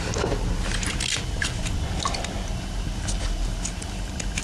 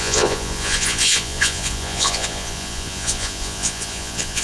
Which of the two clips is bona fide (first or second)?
first